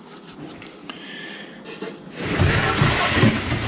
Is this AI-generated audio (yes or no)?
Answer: no